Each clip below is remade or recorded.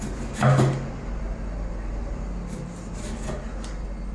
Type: recorded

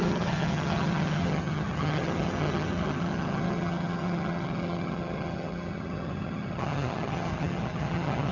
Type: remade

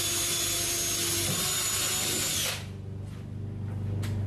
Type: recorded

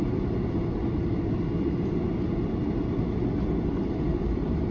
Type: recorded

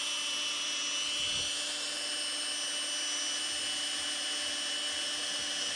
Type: recorded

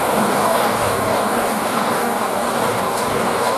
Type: remade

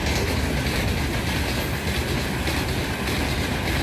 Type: recorded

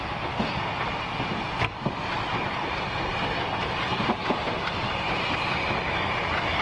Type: recorded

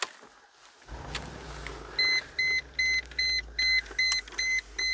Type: recorded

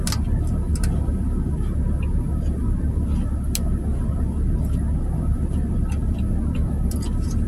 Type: recorded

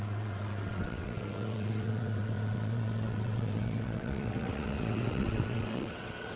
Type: remade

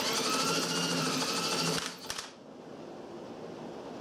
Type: recorded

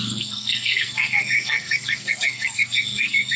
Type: remade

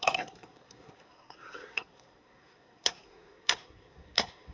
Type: remade